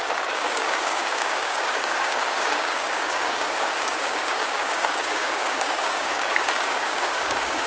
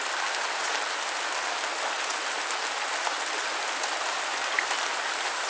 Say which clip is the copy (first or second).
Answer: first